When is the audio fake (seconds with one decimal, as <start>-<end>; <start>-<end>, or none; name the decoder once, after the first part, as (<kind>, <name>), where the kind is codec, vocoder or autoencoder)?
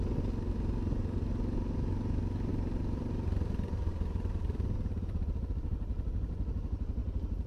2.5-5.5 (vocoder, BigVGAN v2); 7.0-7.5